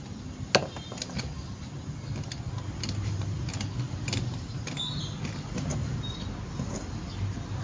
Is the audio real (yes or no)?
yes